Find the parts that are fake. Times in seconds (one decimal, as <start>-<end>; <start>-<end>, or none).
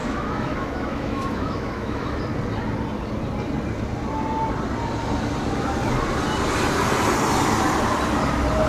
0.0-2.2